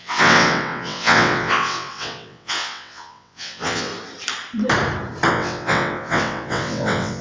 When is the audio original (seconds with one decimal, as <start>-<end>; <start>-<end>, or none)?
3.9-5.3